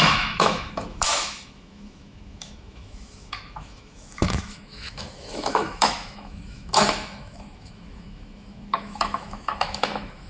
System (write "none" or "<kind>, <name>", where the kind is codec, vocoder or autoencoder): autoencoder, DAC-VAE